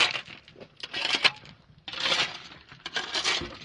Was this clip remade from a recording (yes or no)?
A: no